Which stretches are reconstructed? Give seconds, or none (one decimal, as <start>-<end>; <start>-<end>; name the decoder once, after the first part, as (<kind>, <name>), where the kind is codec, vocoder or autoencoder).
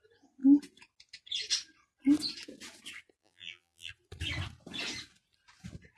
3.2-3.9 (vocoder, BigVGAN v2)